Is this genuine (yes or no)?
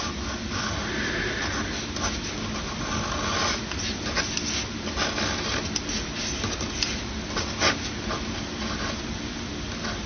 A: yes